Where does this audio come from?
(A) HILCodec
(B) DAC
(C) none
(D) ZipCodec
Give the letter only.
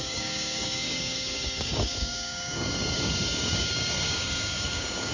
B